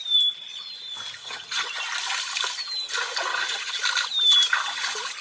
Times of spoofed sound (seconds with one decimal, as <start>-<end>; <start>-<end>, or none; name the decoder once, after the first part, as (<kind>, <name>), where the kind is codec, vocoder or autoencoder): 1.2-1.8 (vocoder, HiFi-GAN); 3.3-3.8